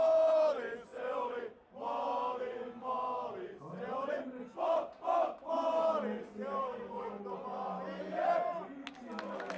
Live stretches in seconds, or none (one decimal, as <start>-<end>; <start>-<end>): 0.0-6.6; 7.2-9.6